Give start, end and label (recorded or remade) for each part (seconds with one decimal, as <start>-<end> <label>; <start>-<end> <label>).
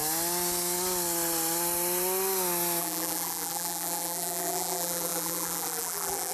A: 0.0-2.8 recorded; 2.8-6.3 remade